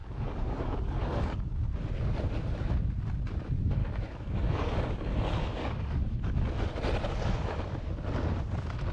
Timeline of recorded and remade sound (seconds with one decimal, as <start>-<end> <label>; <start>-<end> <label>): 0.0-1.5 remade; 1.5-3.8 recorded; 3.8-6.5 remade; 6.5-8.9 recorded